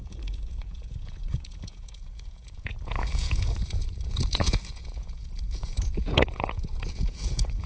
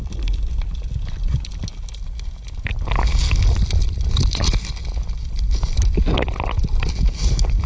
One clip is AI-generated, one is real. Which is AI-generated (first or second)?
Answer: first